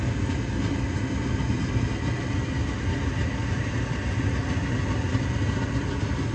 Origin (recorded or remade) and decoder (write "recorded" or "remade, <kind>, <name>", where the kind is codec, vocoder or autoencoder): recorded